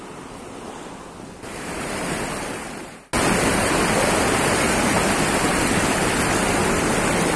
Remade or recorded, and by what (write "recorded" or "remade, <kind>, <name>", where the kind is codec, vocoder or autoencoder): recorded